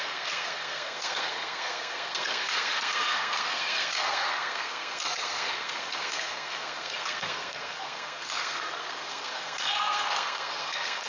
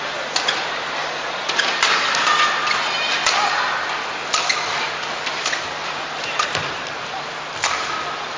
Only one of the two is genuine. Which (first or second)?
second